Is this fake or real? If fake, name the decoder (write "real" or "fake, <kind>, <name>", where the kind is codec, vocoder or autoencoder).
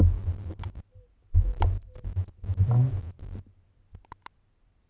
real